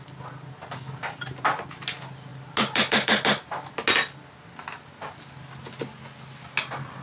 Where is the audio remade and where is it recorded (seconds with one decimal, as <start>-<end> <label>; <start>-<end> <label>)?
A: 0.0-7.0 recorded